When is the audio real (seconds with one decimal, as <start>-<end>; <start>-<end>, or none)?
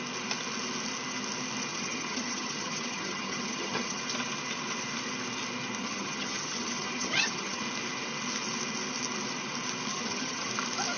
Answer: 0.0-1.7; 4.0-5.8; 7.6-9.9; 10.5-11.0